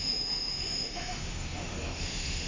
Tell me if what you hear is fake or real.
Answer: fake